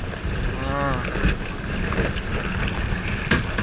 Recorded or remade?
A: recorded